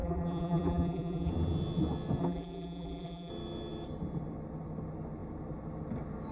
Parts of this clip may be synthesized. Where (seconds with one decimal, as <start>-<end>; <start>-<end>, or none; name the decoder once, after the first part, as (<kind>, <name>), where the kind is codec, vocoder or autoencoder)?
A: 0.0-1.3 (vocoder, BigVGAN v2); 2.2-3.3